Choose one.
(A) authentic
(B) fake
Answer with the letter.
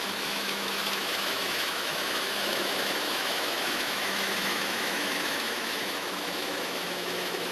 B